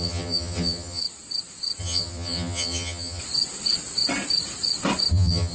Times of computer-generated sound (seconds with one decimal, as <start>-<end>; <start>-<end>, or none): 0.0-1.0; 1.8-3.2; 5.1-5.5